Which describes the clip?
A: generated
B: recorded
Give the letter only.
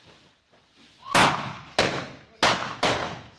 B